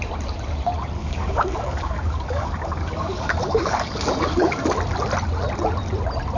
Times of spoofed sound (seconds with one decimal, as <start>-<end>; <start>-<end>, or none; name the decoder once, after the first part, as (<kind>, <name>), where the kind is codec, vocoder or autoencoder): 1.0-4.8 (codec, DAC)